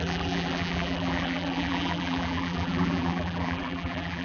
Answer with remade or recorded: remade